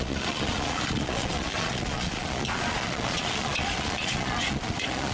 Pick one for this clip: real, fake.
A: fake